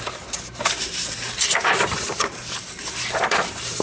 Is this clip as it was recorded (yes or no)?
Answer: no